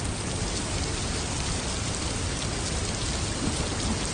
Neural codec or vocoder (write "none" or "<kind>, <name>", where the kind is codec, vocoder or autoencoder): none